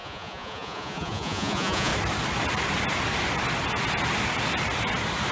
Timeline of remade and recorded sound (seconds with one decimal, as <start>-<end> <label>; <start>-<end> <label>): 0.0-1.9 remade; 1.9-5.3 recorded

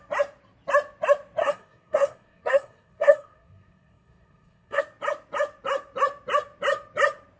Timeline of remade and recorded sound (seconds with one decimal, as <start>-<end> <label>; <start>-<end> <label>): 0.0-1.4 recorded; 1.4-4.8 remade; 4.8-7.4 recorded

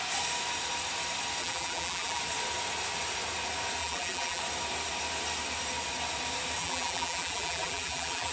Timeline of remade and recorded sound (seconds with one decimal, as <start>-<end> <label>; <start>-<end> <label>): 0.0-1.4 recorded; 1.4-2.2 remade; 2.2-3.8 recorded; 3.8-4.4 remade; 4.4-6.6 recorded; 6.6-8.3 remade